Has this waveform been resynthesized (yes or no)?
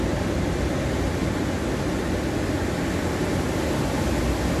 no